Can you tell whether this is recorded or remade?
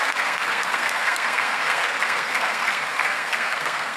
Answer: remade